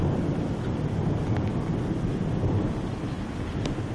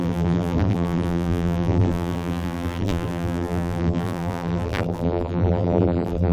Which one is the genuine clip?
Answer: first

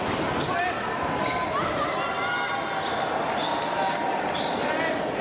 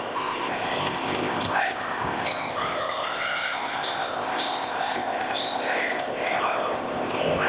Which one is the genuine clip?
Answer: first